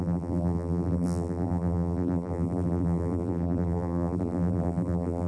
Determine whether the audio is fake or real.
fake